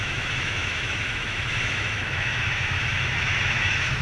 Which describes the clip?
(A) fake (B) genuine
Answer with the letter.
A